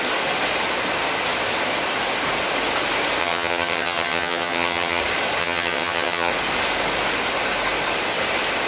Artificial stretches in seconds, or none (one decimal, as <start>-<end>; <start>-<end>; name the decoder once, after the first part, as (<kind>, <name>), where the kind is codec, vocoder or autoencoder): 3.2-5.0 (vocoder, HiFi-GAN); 5.4-6.3